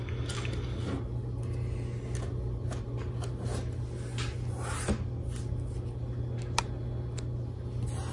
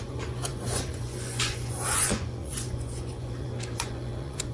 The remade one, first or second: second